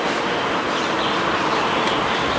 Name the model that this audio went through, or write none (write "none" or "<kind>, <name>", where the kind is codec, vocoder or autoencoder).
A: none